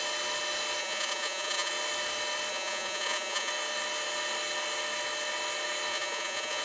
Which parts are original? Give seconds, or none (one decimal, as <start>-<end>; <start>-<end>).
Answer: 0.0-0.8; 1.7-2.5; 3.5-5.9